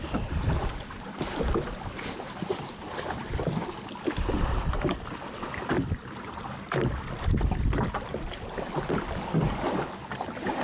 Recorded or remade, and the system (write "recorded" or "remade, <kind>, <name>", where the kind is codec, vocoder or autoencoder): recorded